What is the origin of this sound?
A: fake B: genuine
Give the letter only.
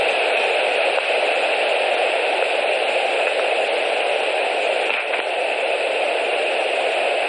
B